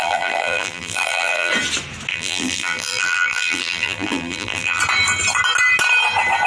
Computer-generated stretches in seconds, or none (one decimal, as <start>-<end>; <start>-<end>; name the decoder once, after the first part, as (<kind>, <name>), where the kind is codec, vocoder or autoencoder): 0.0-1.5 (vocoder, BigVGAN v2); 2.1-4.8